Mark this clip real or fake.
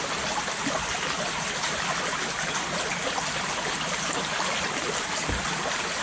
real